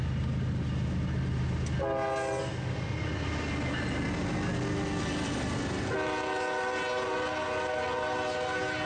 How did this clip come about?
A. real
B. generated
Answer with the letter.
A